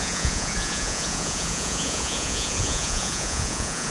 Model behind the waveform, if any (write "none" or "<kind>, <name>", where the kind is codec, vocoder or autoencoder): vocoder, Vocos